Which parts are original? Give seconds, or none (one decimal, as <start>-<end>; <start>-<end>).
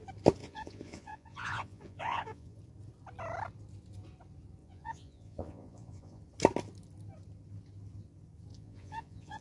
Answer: 0.0-0.4; 2.6-4.6; 6.2-8.5